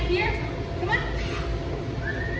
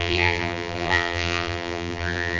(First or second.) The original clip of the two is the first